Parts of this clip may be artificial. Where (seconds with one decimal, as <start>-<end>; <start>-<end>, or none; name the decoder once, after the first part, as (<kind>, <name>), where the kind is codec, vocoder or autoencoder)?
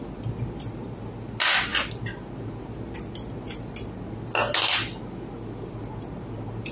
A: none